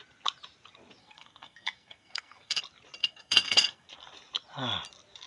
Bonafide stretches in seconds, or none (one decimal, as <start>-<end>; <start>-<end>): 0.0-1.0; 2.6-3.0; 3.9-5.3